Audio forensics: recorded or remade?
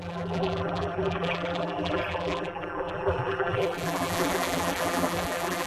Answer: remade